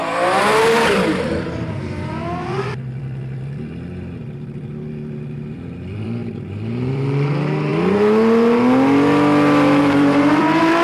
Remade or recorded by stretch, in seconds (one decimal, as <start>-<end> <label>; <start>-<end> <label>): 0.0-6.2 remade; 6.2-6.9 recorded; 6.9-7.7 remade; 7.7-9.8 recorded; 9.8-10.8 remade